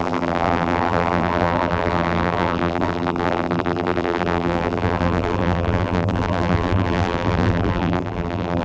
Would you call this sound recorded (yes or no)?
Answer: no